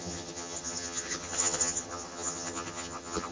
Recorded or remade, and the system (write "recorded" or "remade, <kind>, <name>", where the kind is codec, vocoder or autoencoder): remade, vocoder, HiFi-GAN